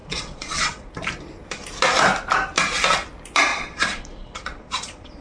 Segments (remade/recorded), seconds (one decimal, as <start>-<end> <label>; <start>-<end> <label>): 0.0-0.9 remade; 0.9-3.5 recorded; 3.5-5.2 remade